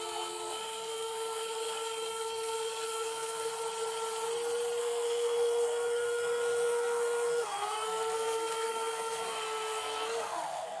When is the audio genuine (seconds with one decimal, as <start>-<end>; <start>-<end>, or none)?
3.5-4.8